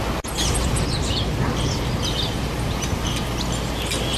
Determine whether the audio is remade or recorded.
recorded